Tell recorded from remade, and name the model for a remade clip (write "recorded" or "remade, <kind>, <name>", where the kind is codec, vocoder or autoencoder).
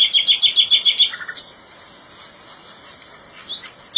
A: recorded